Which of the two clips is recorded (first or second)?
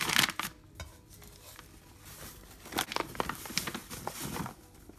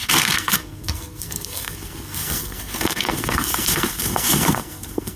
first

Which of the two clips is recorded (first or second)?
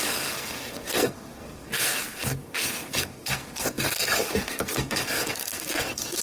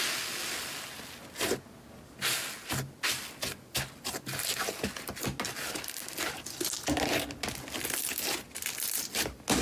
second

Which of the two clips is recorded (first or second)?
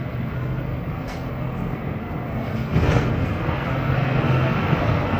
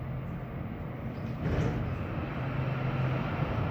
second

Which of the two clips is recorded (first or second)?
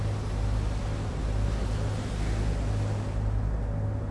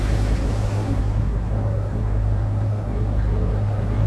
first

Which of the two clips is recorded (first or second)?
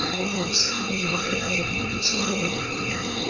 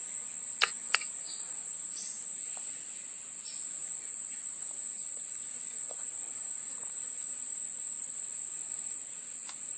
second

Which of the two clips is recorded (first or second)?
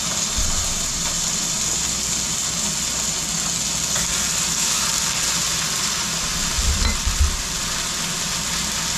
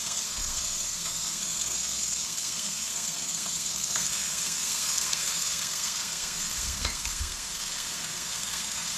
first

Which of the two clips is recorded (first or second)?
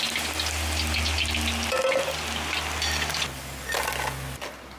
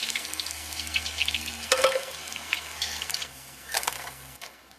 first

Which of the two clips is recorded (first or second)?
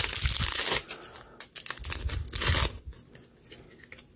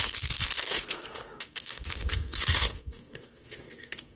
first